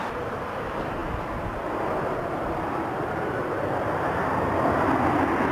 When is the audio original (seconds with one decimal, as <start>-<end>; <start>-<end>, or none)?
0.0-5.5